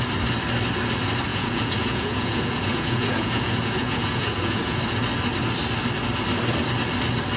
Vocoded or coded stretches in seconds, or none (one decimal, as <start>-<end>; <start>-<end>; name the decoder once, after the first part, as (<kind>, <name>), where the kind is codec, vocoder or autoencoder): 1.3-4.8 (vocoder, Vocos)